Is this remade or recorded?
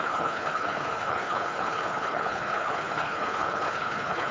remade